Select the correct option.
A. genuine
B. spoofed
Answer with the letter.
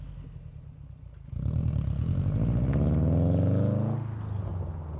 A